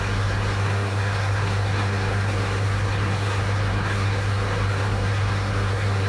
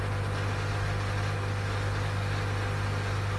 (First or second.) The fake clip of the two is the first